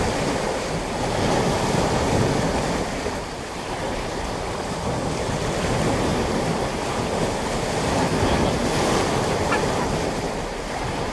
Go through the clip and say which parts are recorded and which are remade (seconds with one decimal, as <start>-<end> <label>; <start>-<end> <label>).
0.0-11.1 remade